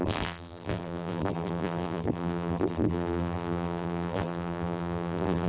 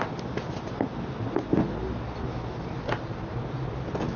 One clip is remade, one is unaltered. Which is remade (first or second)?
first